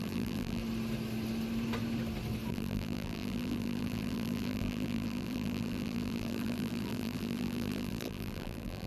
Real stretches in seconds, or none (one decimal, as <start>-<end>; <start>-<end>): 0.6-2.5